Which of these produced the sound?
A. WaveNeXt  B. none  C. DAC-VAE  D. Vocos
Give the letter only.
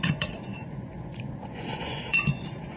D